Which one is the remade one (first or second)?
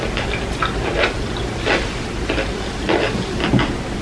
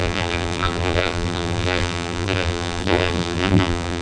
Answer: second